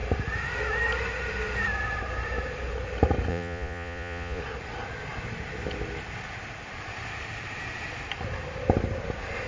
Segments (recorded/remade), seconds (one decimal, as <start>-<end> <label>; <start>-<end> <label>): 0.0-3.3 recorded; 3.3-4.4 remade; 4.4-9.5 recorded